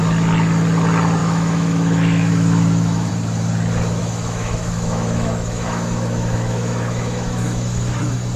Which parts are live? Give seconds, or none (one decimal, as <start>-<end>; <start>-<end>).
0.0-1.2; 3.1-4.0; 8.0-8.4